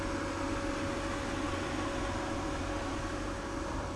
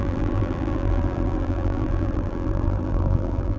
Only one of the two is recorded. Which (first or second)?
first